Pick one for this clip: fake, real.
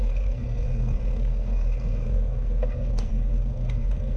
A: fake